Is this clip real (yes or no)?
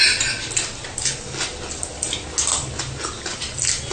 yes